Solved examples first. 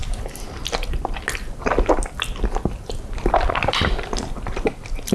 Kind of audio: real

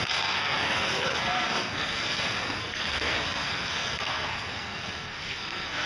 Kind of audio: fake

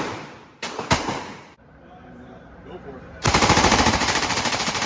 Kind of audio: fake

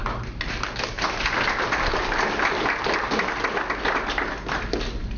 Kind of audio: real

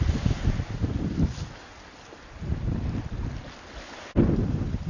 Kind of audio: real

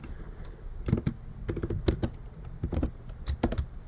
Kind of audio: real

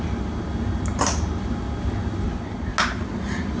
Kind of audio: real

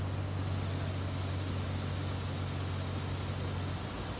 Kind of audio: real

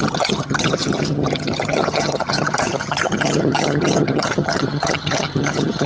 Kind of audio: fake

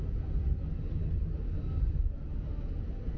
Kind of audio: real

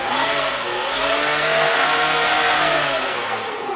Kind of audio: fake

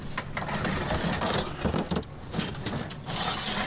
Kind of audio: real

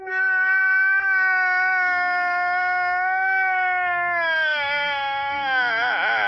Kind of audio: fake